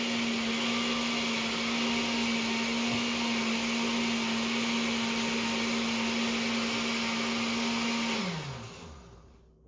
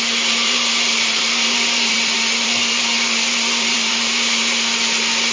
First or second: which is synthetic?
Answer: second